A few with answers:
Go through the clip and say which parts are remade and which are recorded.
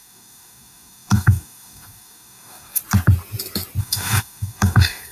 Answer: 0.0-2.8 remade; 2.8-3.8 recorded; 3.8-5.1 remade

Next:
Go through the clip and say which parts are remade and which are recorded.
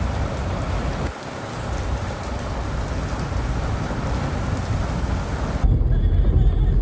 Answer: 0.0-6.8 recorded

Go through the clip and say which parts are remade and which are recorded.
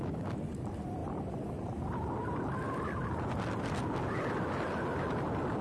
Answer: 0.0-5.6 recorded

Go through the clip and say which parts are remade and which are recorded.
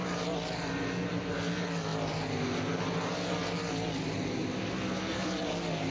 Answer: 0.0-5.9 recorded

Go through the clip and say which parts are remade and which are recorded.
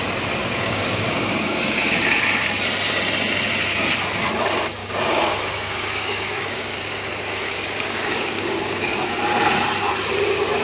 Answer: 0.0-0.4 recorded; 0.4-2.2 remade; 2.2-4.8 recorded; 4.8-9.2 remade; 9.2-10.6 recorded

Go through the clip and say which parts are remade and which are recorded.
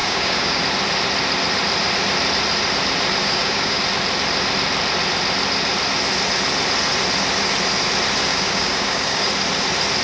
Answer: 0.0-0.6 remade; 0.6-3.2 recorded; 3.2-3.8 remade; 3.8-8.3 recorded; 8.3-9.3 remade; 9.3-10.0 recorded